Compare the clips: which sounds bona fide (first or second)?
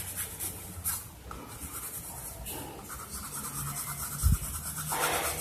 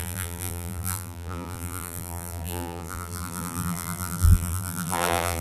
first